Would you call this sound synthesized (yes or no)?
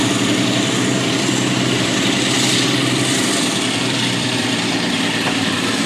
yes